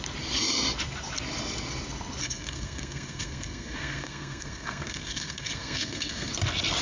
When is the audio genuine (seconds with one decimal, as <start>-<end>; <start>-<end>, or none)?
0.0-2.2; 6.3-6.8